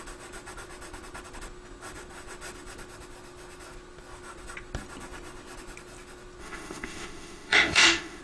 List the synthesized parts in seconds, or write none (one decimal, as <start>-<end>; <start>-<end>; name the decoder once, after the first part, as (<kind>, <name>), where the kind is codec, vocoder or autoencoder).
6.4-8.2 (autoencoder, DAC-VAE)